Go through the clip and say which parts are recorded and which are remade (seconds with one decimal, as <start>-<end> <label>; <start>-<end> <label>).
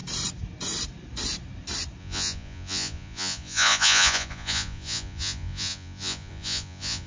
0.0-2.0 recorded; 2.0-7.1 remade